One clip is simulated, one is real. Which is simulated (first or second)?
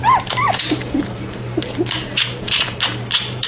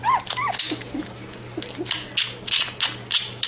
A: first